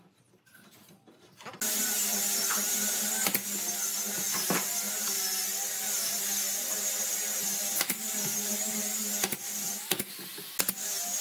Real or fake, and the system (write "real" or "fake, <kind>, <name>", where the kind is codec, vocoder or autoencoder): real